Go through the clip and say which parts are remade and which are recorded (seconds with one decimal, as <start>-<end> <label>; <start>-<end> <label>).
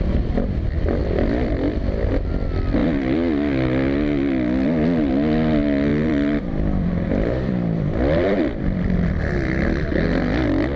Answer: 0.0-1.0 recorded; 1.0-2.1 remade; 2.1-5.9 recorded; 5.9-9.2 remade; 9.2-10.8 recorded